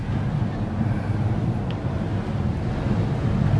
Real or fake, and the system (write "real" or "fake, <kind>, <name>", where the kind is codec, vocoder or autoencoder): real